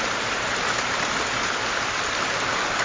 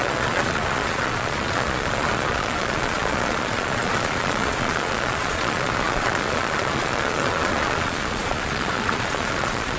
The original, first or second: first